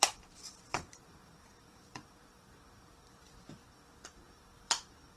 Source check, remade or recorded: remade